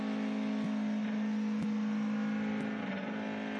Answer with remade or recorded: recorded